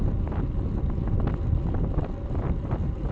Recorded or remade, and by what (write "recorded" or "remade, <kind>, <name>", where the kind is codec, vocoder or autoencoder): recorded